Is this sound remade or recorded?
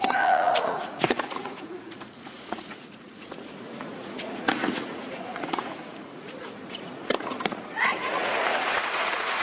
remade